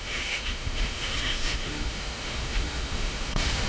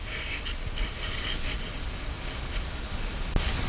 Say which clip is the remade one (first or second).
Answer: first